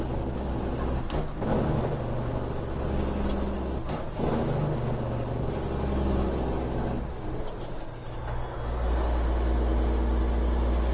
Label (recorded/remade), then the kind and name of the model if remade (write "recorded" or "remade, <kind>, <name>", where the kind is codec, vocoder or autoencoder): recorded